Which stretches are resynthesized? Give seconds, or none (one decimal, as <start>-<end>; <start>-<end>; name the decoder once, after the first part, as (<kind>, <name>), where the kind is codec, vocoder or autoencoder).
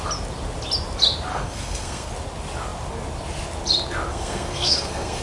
1.3-2.1 (codec, SNAC); 4.1-5.2